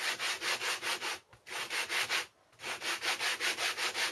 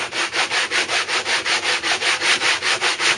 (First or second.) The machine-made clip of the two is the second